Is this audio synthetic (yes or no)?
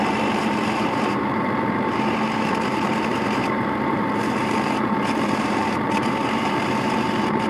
yes